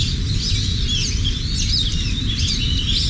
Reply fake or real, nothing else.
real